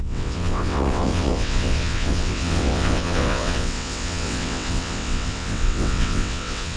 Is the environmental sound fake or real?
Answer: fake